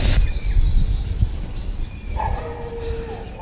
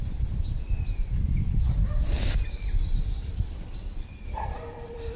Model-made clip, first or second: second